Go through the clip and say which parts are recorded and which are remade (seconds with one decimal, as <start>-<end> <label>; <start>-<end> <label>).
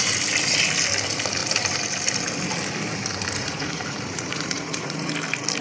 0.0-3.4 recorded; 3.4-5.1 remade; 5.1-5.6 recorded